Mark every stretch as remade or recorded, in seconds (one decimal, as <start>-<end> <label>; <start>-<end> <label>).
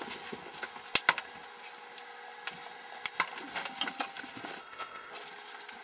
0.0-4.6 recorded; 4.6-5.1 remade; 5.1-5.8 recorded